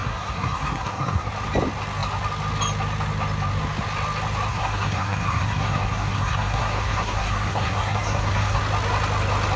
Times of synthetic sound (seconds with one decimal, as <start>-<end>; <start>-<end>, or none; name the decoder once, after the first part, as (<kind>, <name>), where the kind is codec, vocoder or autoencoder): 0.0-1.3 (codec, SNAC); 4.5-8.6